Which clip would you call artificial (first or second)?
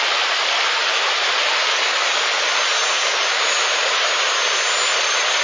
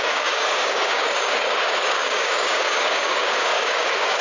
second